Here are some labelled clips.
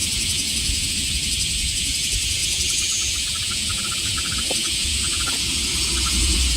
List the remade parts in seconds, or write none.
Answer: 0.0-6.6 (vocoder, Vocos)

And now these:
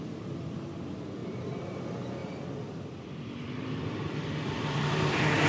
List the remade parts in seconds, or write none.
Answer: 1.2-1.8 (vocoder, BigVGAN v2); 2.2-5.5